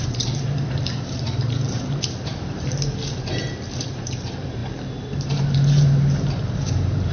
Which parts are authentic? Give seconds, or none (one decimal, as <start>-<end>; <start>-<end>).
2.7-3.8